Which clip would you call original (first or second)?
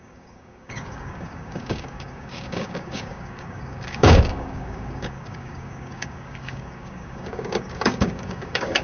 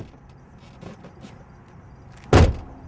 second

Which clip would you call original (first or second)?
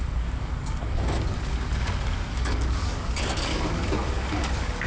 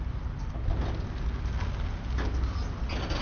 second